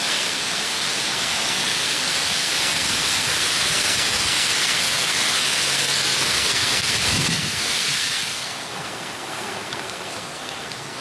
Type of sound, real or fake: fake